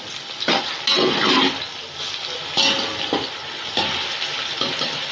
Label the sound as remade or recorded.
recorded